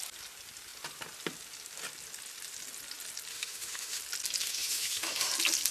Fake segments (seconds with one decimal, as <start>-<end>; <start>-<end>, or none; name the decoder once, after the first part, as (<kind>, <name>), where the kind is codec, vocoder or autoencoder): 3.3-4.0 (autoencoder, DAC-VAE); 4.4-5.3